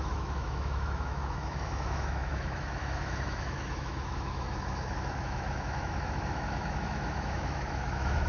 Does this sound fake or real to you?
fake